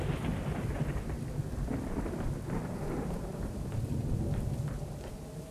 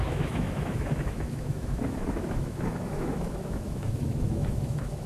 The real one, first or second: first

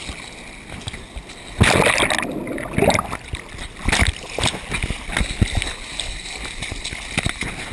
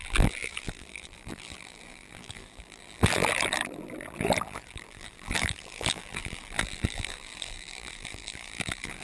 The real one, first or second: first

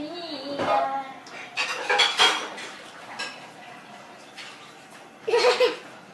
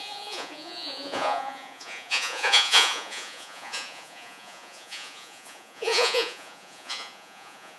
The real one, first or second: first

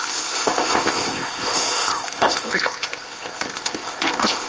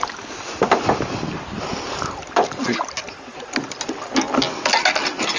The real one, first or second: second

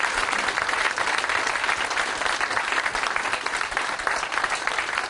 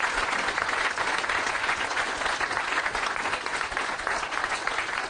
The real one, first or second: first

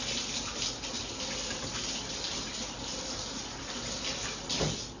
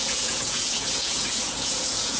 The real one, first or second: first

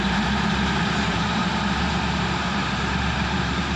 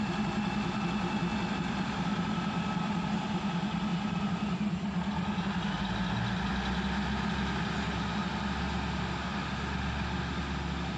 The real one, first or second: second